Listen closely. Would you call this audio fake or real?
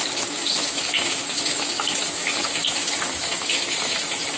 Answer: fake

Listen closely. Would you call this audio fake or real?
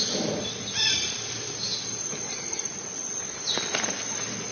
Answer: real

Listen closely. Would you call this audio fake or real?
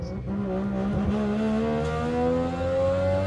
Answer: real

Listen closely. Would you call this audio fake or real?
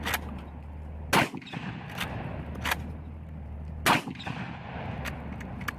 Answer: real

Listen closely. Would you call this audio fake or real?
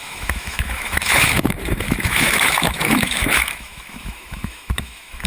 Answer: fake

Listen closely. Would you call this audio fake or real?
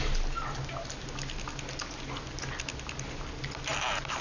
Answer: real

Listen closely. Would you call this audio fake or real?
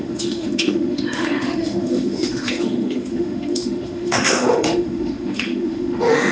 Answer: fake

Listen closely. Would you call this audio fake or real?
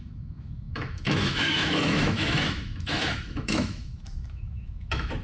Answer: fake